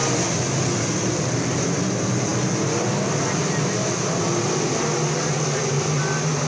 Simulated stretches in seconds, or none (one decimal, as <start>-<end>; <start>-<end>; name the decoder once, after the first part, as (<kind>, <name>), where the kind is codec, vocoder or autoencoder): none